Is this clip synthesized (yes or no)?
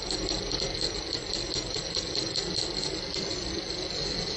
no